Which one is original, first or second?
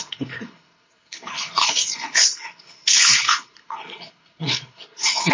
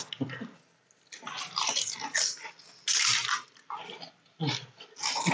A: second